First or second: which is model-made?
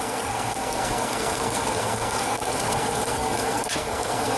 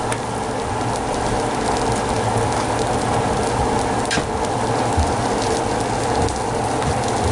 first